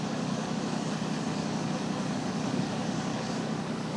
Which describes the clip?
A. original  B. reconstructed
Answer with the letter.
B